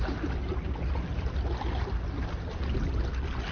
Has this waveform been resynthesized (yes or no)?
no